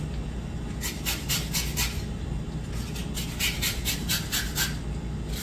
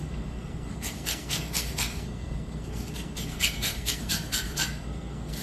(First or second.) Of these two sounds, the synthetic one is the second